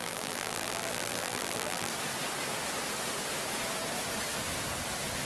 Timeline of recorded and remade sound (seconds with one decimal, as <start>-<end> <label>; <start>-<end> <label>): 0.0-1.9 remade; 1.9-5.3 recorded